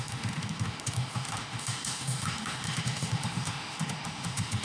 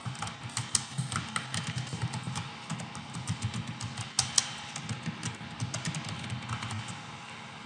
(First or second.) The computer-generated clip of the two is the first